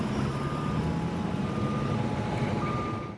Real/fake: real